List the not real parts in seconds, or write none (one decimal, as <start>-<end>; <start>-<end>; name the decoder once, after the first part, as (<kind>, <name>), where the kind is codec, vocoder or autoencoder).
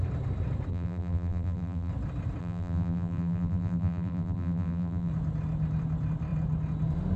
0.7-1.9 (vocoder, BigVGAN v2); 2.4-5.1